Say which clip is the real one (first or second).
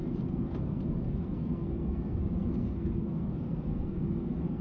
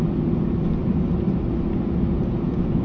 second